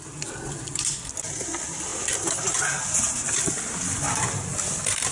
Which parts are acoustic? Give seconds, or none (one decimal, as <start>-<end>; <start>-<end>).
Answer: 0.0-5.1